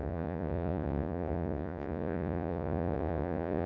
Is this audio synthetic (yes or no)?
yes